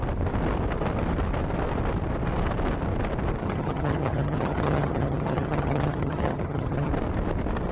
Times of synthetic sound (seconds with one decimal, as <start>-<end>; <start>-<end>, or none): 3.4-6.9